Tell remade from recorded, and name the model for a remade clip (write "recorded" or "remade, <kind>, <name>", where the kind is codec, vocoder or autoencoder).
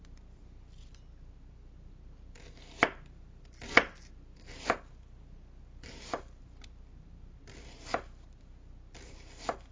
recorded